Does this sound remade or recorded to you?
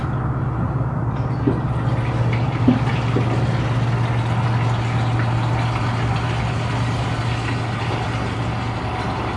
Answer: recorded